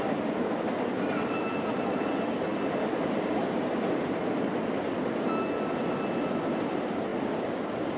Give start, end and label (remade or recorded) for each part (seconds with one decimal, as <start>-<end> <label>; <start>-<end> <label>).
0.0-8.0 recorded